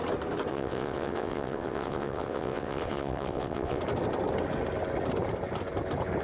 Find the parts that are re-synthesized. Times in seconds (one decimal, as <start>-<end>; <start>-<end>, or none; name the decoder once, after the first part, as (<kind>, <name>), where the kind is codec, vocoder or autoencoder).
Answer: 0.5-3.8 (vocoder, WaveNeXt)